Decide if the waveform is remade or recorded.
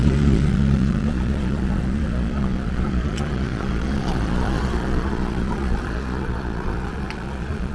remade